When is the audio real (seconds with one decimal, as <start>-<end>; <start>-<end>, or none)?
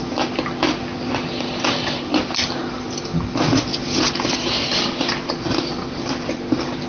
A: 0.0-6.9